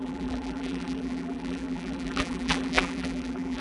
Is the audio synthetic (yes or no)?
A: yes